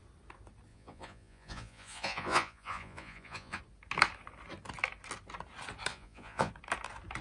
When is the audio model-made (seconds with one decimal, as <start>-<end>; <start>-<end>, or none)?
0.7-3.6; 5.9-6.5